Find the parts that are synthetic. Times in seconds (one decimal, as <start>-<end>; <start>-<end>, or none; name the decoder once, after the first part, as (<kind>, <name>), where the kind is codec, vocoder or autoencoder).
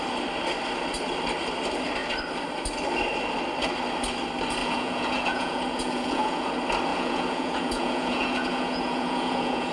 4.6-6.5 (vocoder, Vocos); 6.9-9.7